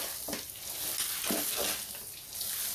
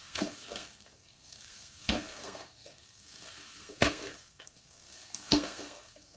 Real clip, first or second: first